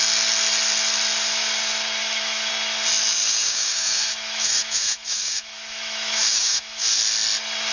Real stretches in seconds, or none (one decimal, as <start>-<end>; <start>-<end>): 0.0-2.0; 2.5-3.2; 7.0-7.7